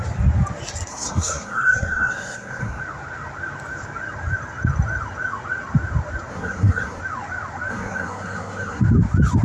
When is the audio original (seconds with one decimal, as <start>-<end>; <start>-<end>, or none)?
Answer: 0.0-0.9; 2.8-6.3; 7.0-7.7; 8.8-9.4